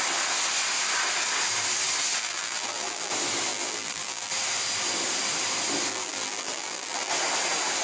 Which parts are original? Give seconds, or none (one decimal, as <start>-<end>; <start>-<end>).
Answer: 0.0-2.2; 3.1-3.5; 4.3-5.9; 7.1-7.8